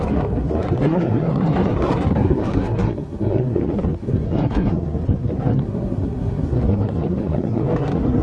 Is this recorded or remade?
remade